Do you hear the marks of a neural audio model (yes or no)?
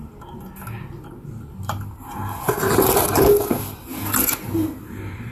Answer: no